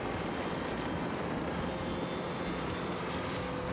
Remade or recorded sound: recorded